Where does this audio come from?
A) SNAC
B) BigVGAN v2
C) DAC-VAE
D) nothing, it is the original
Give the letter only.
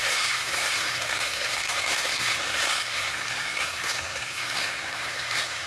A